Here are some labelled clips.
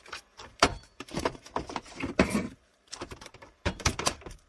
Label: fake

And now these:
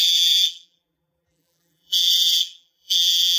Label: fake